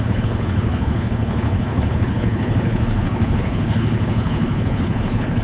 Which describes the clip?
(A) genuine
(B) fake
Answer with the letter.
B